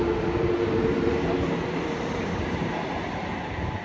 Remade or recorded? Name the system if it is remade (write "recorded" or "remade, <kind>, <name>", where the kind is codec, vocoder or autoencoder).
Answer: recorded